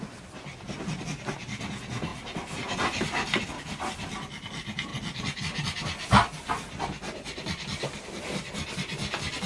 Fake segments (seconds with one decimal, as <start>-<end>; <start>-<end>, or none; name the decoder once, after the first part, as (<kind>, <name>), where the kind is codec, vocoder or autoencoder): none